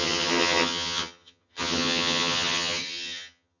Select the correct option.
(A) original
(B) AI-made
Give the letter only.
B